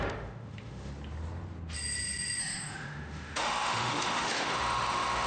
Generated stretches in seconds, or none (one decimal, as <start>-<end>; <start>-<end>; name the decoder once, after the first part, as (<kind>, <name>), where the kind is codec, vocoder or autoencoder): 0.0-0.9 (autoencoder, DAC-VAE); 2.4-5.3